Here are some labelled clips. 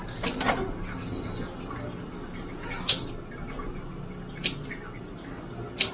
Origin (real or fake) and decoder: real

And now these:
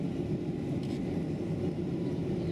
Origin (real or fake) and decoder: real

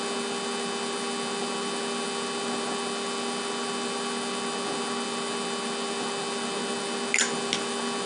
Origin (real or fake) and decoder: real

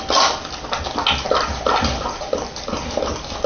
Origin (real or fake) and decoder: real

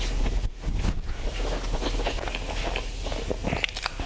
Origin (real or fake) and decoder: real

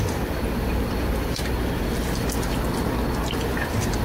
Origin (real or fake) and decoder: real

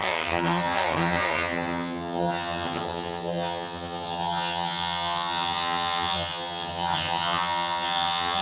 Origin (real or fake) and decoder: fake, vocoder, HiFi-GAN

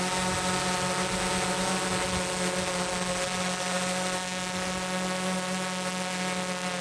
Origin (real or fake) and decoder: real